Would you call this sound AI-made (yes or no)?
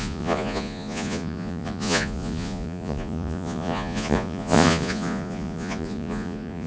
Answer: yes